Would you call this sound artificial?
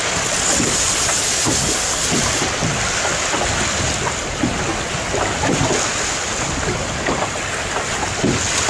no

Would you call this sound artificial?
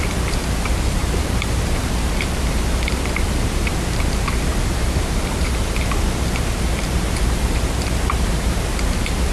yes